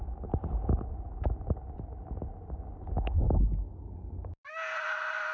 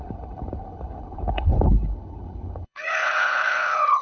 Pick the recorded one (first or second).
first